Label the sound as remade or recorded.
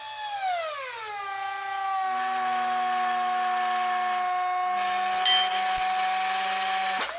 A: recorded